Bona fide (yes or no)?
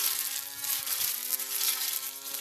yes